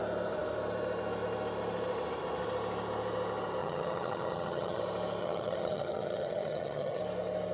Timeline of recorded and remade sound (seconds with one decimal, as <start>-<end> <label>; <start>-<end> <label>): 0.0-3.6 recorded; 3.6-4.8 remade; 4.8-5.2 recorded; 5.2-7.0 remade; 7.0-7.5 recorded